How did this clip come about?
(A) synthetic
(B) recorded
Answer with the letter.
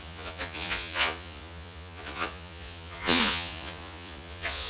A